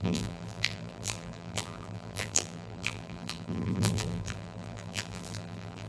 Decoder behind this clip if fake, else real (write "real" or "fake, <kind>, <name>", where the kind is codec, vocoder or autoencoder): fake, vocoder, BigVGAN v2